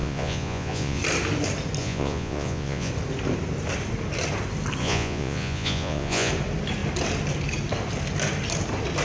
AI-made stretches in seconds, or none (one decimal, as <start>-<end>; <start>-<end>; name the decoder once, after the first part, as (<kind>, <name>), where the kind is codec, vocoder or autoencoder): 0.0-1.0 (vocoder, Vocos); 1.8-2.9; 4.8-6.3